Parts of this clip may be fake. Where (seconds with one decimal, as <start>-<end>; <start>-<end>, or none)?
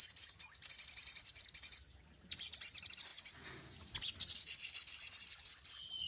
none